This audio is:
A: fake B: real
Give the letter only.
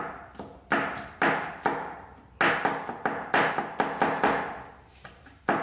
B